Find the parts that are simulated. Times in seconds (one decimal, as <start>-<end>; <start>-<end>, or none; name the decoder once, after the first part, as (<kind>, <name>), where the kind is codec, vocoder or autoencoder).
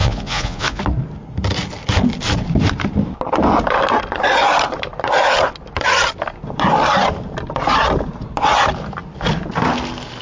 0.0-0.8 (vocoder, Vocos)